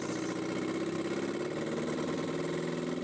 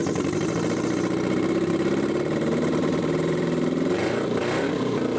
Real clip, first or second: first